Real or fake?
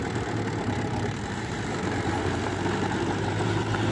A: fake